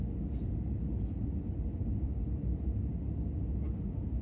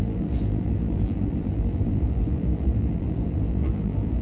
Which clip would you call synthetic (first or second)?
second